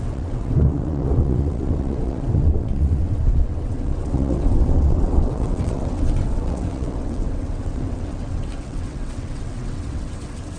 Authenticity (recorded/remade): remade